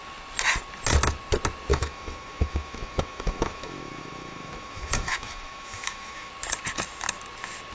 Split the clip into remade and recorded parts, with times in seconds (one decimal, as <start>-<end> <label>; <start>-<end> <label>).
0.0-1.7 recorded; 1.7-6.3 remade; 6.3-7.7 recorded